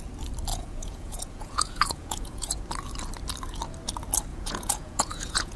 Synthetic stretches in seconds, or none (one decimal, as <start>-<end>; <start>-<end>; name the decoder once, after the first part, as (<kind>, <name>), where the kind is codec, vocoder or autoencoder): 0.5-2.6 (vocoder, Vocos); 4.3-5.6